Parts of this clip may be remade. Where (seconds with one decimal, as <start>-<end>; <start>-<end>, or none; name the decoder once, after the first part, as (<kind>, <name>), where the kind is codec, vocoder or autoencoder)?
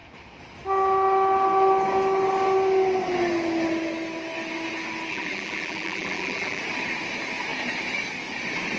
5.1-6.6 (vocoder, BigVGAN v2)